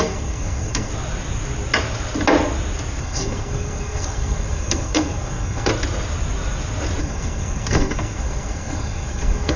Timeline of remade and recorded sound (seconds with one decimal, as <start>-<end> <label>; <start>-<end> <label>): 0.0-0.9 remade; 0.9-3.0 recorded; 3.0-5.7 remade; 5.7-7.0 recorded; 7.0-9.6 remade